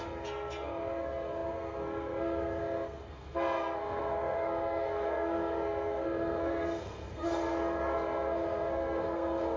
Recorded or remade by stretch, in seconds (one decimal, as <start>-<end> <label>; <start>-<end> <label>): 0.0-9.6 remade